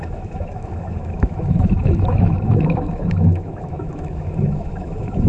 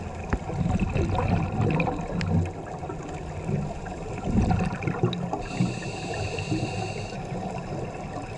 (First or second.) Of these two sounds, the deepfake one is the first